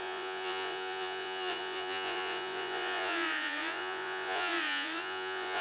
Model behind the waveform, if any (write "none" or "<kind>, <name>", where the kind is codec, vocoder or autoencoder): vocoder, Vocos